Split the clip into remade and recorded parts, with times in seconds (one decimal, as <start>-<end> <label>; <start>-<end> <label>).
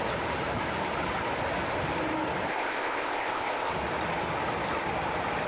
0.0-2.5 recorded; 2.5-3.7 remade; 3.7-5.5 recorded